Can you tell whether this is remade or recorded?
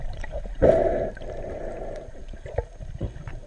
remade